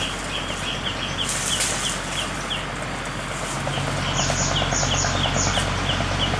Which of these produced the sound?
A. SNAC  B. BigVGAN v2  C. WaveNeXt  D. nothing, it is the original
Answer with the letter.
D